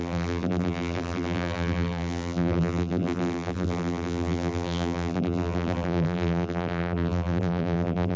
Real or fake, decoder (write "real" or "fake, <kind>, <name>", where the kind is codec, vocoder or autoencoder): fake, vocoder, BigVGAN v2